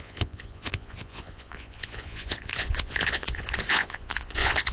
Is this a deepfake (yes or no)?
yes